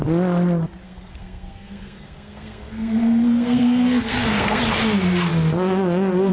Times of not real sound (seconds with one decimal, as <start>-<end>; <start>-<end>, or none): 0.8-4.6